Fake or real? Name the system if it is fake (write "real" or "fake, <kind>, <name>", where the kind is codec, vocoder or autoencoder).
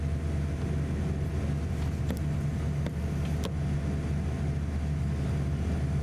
real